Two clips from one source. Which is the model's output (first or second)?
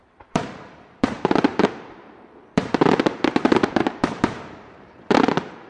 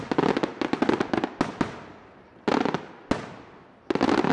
first